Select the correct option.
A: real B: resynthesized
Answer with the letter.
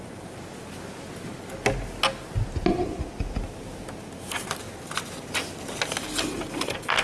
A